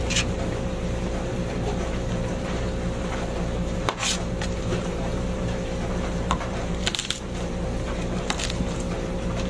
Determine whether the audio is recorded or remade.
remade